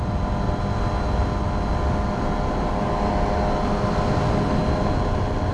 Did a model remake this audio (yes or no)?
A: no